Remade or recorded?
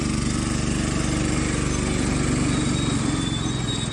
recorded